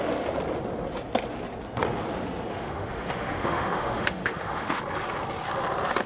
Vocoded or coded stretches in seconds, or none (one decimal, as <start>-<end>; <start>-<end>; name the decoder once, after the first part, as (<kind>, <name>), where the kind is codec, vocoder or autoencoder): 2.5-4.8 (autoencoder, DAC-VAE)